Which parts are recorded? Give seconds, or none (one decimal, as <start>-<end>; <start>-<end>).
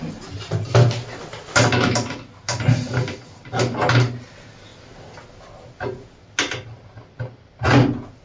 0.0-8.2